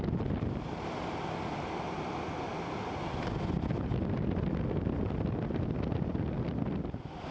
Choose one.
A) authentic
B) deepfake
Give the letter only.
A